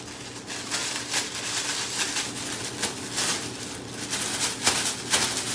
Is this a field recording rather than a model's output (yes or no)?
yes